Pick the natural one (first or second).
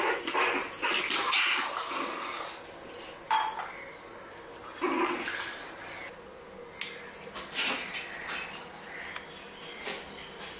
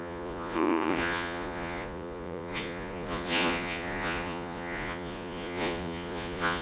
first